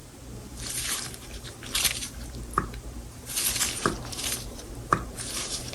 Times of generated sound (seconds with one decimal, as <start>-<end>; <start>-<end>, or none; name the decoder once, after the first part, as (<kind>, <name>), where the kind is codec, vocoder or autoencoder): 0.7-5.7 (vocoder, BigVGAN v2)